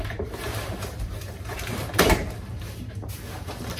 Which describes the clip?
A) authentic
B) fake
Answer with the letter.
B